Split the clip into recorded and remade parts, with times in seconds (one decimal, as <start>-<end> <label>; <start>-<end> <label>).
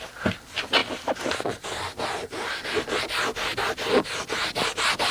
0.0-5.1 recorded